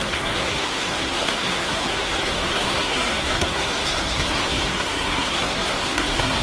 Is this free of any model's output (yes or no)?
no